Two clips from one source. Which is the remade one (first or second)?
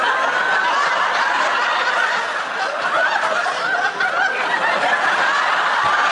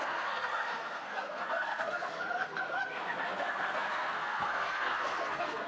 second